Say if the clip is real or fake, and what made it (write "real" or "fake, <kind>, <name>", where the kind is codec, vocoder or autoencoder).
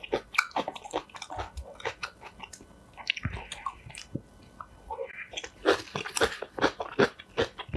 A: real